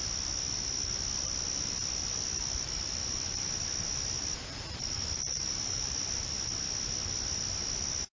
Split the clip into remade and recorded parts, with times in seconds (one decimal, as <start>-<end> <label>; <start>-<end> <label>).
0.0-8.1 recorded